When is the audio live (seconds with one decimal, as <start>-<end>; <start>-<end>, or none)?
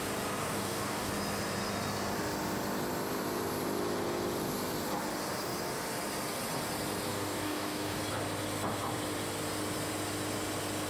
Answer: 0.0-0.4; 1.1-7.1; 8.0-10.9